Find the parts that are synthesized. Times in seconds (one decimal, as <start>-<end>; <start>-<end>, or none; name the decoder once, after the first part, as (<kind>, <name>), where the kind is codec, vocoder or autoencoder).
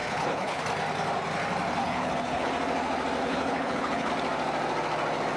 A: 0.0-0.6 (codec, HILCodec); 1.8-2.5; 3.2-4.1